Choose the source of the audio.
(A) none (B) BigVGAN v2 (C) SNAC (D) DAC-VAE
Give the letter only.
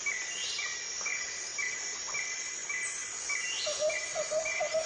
A